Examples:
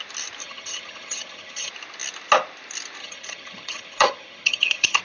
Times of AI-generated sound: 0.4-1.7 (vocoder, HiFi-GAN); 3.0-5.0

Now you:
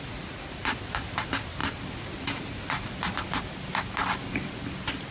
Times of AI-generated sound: 0.0-0.6 (vocoder, BigVGAN v2); 1.2-1.6

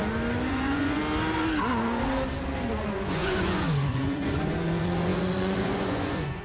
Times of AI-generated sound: 0.5-1.0 (vocoder, Vocos); 2.8-6.4